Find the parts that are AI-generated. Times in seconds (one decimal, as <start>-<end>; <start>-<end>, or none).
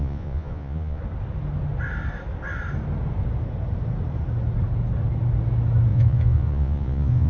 0.0-1.0; 5.9-7.3